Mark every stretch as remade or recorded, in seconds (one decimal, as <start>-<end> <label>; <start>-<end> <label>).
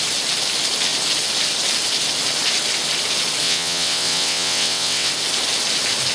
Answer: 0.0-3.4 recorded; 3.4-5.1 remade; 5.1-6.1 recorded